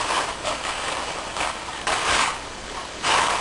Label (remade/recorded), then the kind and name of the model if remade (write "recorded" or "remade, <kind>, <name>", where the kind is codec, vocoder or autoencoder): remade, codec, DAC